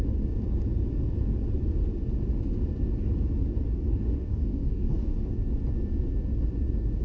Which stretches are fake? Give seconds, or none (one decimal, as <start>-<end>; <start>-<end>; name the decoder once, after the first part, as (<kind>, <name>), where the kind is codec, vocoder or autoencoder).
3.9-5.3 (codec, DAC)